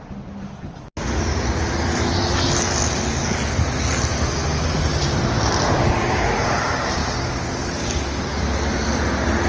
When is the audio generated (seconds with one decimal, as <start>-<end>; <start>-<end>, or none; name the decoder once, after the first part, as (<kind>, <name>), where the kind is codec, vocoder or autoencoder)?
none